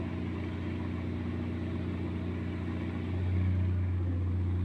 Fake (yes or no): no